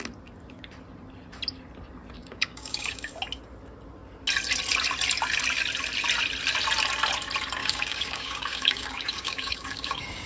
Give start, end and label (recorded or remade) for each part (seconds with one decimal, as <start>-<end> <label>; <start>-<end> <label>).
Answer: 0.0-2.2 recorded; 2.2-3.1 remade; 3.1-7.6 recorded; 7.6-10.3 remade